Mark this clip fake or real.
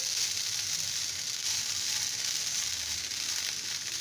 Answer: real